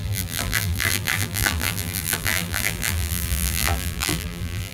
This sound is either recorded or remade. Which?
remade